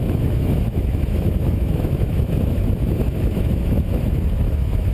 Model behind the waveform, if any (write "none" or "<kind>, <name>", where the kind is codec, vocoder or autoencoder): autoencoder, DAC-VAE